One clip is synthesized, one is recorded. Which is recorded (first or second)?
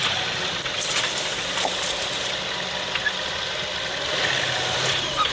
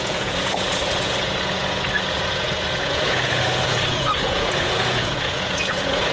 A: first